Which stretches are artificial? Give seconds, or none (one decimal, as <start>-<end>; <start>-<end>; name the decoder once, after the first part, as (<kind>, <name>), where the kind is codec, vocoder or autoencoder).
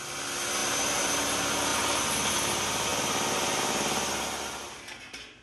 0.6-1.2 (vocoder, BigVGAN v2); 1.7-2.3